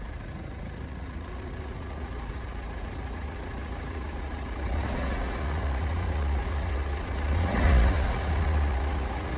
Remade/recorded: remade